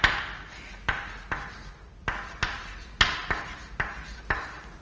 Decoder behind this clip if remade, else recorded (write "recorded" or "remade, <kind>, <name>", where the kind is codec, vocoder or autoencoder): recorded